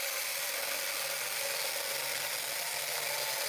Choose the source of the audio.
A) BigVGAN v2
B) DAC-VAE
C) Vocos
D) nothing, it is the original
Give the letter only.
D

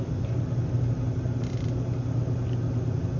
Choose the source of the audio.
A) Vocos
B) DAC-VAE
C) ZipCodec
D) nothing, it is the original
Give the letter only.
D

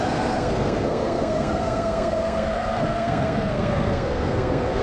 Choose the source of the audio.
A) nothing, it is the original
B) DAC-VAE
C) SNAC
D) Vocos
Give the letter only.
C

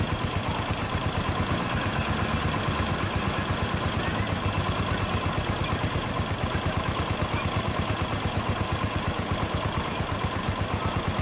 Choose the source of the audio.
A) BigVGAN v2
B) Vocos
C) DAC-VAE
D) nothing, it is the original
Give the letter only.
D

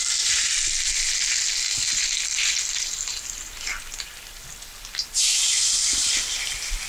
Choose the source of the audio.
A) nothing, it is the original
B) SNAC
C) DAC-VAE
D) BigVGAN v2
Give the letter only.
A